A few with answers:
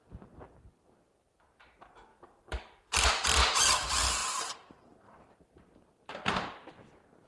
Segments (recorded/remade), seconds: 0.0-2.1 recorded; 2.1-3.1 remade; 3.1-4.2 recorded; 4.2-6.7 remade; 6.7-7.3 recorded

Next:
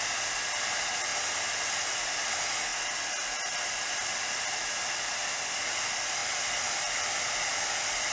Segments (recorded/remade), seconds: 0.0-1.1 remade; 1.1-1.7 recorded; 1.7-2.7 remade; 2.7-3.5 recorded; 3.5-4.6 remade; 4.6-5.5 recorded; 5.5-8.1 remade

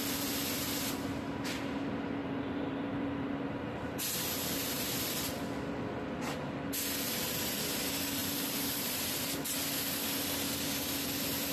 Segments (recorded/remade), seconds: 0.0-2.2 recorded; 2.2-3.8 remade; 3.8-4.6 recorded; 4.6-5.4 remade; 5.4-8.2 recorded; 8.2-9.0 remade; 9.0-11.5 recorded

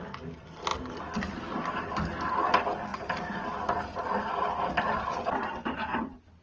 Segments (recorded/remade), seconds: 0.0-2.9 recorded; 2.9-5.3 remade; 5.3-6.4 recorded

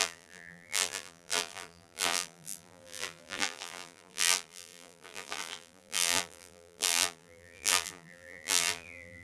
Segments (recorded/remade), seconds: 0.0-9.2 remade

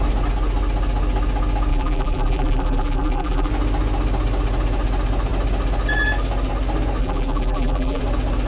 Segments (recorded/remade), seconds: 0.0-1.7 recorded; 1.7-3.5 remade; 3.5-7.0 recorded; 7.0-8.0 remade; 8.0-8.5 recorded

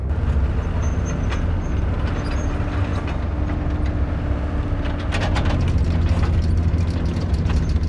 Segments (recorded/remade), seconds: 0.0-7.1 recorded; 7.1-7.9 remade

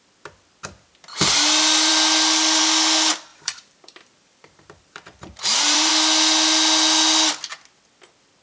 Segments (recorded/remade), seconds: 0.0-3.3 recorded; 3.3-5.9 remade; 5.9-8.4 recorded